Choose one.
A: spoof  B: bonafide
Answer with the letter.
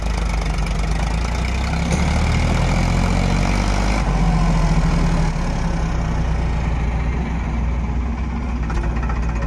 B